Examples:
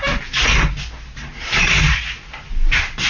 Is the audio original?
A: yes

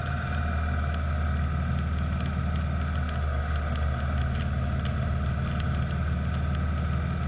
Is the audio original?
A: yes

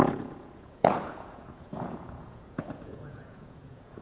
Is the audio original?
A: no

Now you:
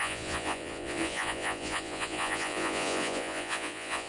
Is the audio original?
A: no